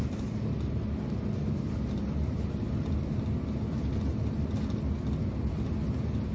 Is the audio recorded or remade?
recorded